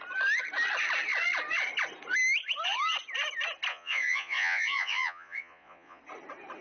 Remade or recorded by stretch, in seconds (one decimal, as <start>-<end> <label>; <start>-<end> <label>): 0.0-3.7 recorded; 3.7-6.0 remade; 6.0-6.6 recorded